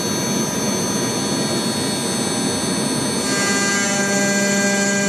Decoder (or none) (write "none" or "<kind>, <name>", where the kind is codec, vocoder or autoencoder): none